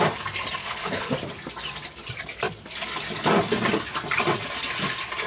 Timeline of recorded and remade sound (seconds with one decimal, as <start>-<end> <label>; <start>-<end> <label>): 0.0-0.6 recorded; 0.6-1.1 remade; 1.1-5.3 recorded